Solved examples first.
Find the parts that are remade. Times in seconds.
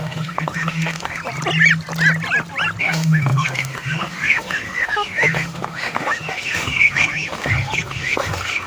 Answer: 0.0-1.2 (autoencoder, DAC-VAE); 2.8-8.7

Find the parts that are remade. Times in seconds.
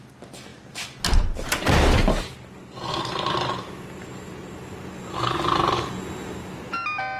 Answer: none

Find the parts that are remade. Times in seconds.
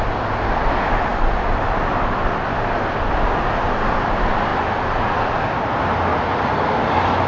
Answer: none